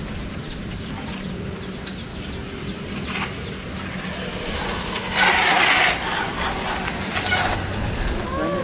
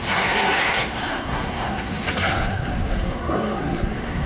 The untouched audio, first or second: first